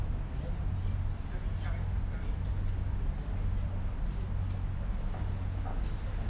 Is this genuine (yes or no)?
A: yes